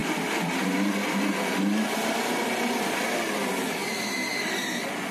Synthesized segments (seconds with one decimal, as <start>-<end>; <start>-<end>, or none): none